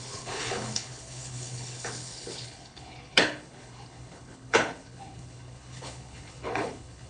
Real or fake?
fake